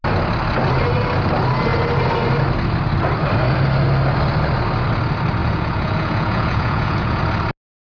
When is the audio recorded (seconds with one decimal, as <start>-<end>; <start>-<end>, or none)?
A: 0.0-5.4; 7.2-7.8